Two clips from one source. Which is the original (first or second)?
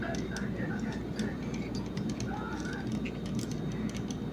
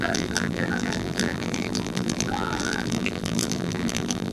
first